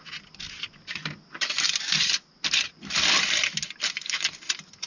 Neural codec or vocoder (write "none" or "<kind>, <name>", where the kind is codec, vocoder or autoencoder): none